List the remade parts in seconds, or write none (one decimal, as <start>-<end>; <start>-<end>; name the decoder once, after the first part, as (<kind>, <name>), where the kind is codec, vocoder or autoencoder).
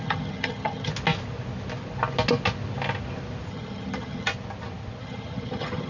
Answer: 0.0-0.9 (vocoder, HiFi-GAN); 3.5-4.3; 5.0-5.9